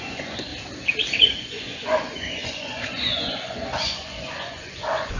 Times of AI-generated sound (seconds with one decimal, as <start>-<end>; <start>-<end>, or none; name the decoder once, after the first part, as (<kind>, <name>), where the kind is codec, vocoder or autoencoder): 0.0-0.5 (vocoder, Vocos); 1.2-5.2